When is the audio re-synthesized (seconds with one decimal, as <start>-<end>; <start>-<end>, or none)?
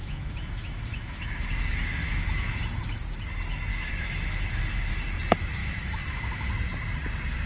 0.0-2.6; 3.7-4.9; 5.6-6.5